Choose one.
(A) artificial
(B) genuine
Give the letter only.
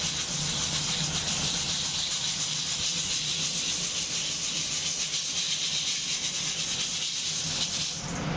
B